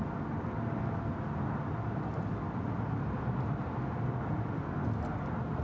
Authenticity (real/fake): real